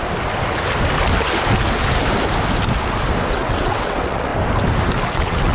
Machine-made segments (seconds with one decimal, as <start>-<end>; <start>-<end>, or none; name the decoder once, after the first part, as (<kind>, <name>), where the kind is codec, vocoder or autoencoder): 3.3-4.3 (vocoder, WaveNeXt); 5.1-5.5